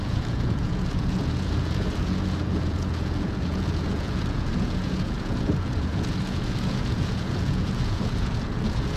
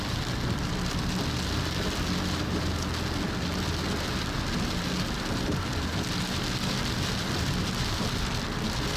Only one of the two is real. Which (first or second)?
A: second